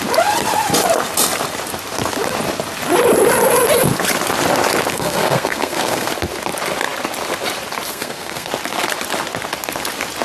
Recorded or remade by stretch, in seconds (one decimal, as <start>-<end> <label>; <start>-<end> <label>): 0.0-4.9 recorded; 4.9-6.1 remade; 6.1-7.9 recorded; 7.9-8.5 remade; 8.5-10.2 recorded